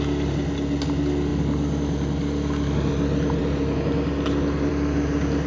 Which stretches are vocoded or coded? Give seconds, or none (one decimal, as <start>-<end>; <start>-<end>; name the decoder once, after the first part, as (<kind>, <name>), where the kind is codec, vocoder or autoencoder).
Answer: none